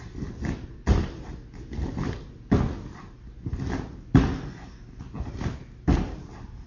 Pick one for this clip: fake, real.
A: real